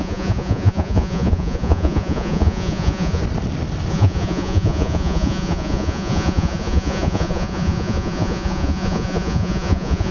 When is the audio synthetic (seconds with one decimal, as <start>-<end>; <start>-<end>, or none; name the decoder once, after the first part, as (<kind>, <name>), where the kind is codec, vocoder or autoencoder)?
0.0-3.2 (vocoder, Vocos); 3.9-10.1

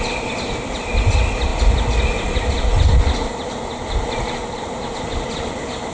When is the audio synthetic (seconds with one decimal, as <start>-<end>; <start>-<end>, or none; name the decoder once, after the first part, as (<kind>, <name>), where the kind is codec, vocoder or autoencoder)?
none

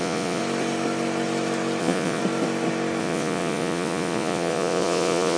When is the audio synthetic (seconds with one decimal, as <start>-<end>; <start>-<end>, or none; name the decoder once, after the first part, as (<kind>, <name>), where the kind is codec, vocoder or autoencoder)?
0.0-0.4 (vocoder, Vocos); 1.8-2.2; 3.0-5.4

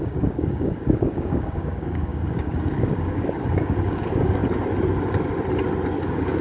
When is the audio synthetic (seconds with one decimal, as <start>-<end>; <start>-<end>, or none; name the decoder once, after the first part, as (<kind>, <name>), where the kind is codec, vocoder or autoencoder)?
0.0-4.4 (codec, DAC); 6.0-6.4

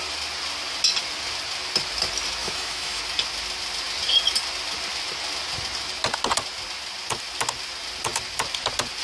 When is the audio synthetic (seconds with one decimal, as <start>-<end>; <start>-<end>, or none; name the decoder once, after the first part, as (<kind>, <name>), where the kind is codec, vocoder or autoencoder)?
2.4-3.0 (autoencoder, DAC-VAE)

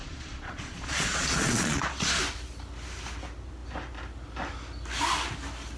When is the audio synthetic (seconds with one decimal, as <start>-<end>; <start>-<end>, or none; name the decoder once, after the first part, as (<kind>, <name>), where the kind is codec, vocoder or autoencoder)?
0.0-2.2 (vocoder, Vocos)

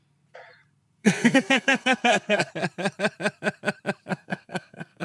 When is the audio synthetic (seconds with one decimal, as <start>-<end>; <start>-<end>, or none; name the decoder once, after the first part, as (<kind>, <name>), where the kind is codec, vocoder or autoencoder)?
1.0-2.5 (codec, SNAC); 4.1-5.0